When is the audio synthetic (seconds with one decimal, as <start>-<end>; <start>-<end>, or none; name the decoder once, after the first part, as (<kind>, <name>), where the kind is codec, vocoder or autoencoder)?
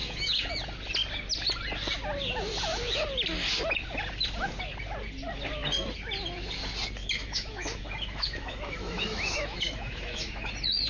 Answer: 0.0-0.5 (autoencoder, DAC-VAE); 7.0-10.5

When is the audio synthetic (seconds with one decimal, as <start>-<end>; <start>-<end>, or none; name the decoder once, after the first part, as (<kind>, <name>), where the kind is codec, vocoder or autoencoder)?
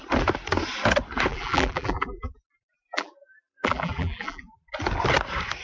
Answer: 1.3-4.7 (vocoder, BigVGAN v2)